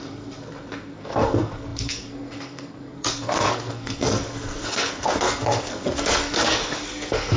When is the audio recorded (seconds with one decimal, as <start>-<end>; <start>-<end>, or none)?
none